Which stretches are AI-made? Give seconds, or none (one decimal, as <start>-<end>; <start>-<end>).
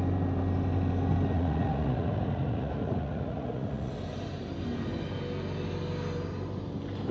1.3-3.9